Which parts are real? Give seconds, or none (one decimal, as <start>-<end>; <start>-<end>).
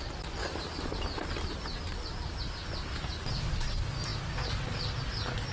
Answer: 0.0-5.5